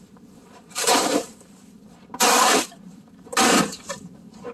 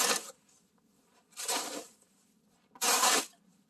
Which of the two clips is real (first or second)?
second